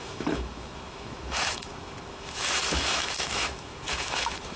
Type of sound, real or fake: fake